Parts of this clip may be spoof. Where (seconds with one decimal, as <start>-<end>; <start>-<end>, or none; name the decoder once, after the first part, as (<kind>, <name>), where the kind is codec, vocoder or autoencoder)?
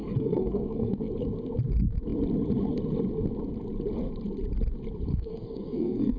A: 0.0-1.1 (codec, SNAC); 5.1-6.2